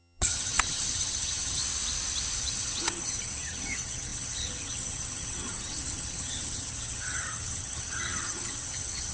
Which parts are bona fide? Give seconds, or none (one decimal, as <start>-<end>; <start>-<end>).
1.6-2.4